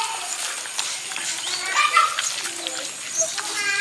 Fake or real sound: real